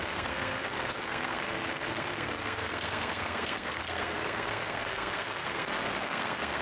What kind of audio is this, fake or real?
fake